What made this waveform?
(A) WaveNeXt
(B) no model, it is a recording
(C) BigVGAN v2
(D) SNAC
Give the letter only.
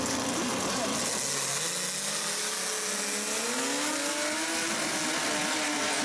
B